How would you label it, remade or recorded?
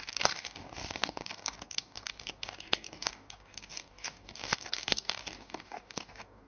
remade